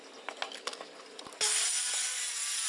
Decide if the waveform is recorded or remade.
recorded